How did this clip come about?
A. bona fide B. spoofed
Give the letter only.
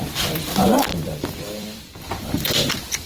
B